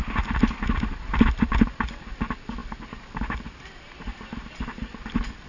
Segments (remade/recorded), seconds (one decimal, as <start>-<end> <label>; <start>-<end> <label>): 0.0-2.0 remade; 2.0-5.5 recorded